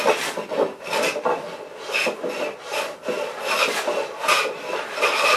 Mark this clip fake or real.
fake